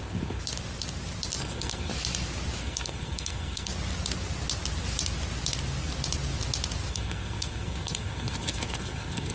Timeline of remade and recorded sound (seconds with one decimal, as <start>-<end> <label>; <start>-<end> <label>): 0.0-0.4 remade; 0.4-1.4 recorded; 1.4-1.9 remade; 1.9-2.6 recorded; 2.6-3.7 remade; 3.7-6.9 recorded; 6.9-9.3 remade